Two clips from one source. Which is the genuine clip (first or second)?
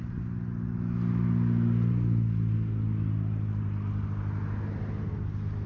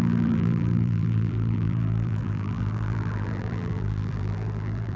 first